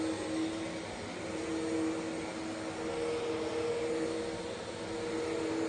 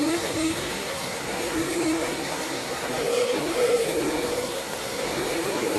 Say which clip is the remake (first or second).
second